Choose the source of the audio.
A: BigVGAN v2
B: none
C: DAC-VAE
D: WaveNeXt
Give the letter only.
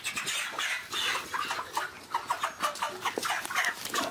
B